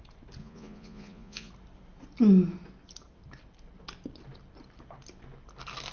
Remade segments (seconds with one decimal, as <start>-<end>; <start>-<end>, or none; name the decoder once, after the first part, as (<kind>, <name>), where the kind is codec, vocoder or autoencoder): 0.4-1.5 (vocoder, Vocos)